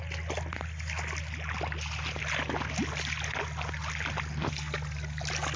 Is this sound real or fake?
real